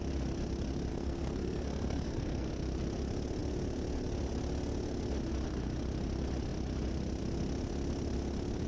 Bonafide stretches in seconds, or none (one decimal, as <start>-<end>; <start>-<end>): 0.0-0.9; 2.5-8.7